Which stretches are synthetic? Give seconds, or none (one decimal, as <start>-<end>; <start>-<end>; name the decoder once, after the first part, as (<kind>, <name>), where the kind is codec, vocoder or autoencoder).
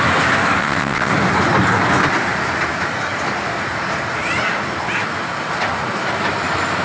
0.6-1.1 (vocoder, WaveNeXt)